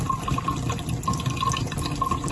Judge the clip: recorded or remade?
recorded